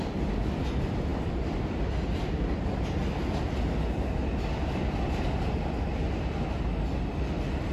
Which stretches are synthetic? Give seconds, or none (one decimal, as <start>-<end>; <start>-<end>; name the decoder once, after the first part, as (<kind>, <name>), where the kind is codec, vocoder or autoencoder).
0.0-3.0 (vocoder, BigVGAN v2); 7.1-7.7